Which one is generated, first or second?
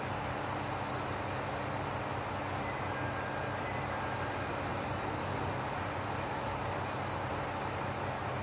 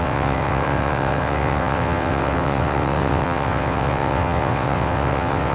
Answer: second